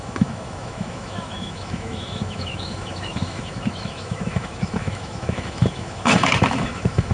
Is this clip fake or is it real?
fake